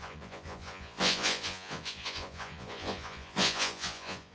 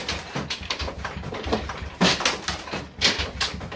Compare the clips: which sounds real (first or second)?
second